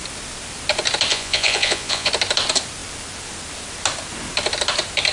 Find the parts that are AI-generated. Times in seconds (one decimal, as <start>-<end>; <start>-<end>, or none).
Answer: 1.1-2.1